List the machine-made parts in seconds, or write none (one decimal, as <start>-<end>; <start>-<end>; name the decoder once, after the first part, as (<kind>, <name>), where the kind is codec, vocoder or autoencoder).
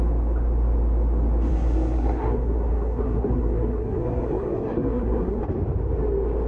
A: 1.5-5.4 (codec, SNAC)